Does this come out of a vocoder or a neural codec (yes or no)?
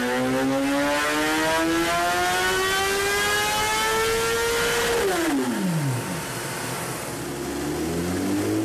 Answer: no